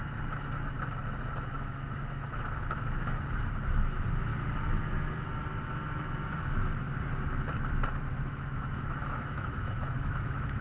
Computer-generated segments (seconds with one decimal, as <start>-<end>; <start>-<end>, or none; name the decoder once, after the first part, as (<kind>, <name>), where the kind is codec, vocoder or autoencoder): 1.5-3.3 (autoencoder, DAC-VAE); 8.1-10.6